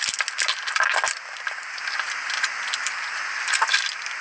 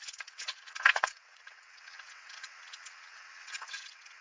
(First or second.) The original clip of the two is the first